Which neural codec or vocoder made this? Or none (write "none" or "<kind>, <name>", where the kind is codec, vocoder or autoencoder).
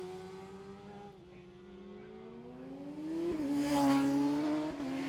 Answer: none